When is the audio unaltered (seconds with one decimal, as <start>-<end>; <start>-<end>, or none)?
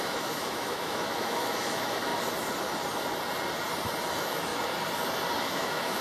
2.1-4.1; 4.5-5.4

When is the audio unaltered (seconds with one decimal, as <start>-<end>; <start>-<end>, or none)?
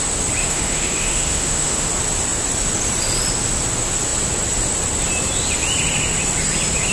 0.0-0.4; 1.9-6.9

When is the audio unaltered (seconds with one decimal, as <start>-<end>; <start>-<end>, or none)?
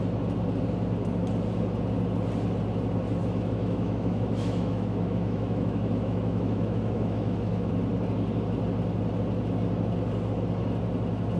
0.0-3.2; 7.7-11.4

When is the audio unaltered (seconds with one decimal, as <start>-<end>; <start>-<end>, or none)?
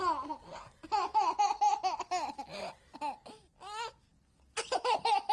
0.0-1.0; 1.6-5.3